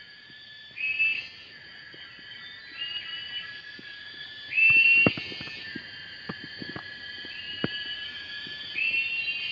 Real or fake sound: real